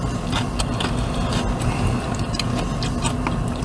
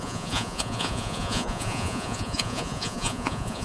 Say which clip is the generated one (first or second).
second